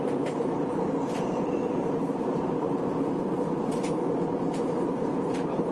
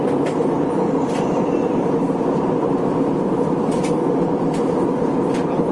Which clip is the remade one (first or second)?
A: first